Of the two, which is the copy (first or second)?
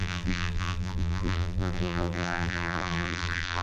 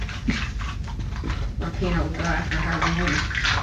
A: first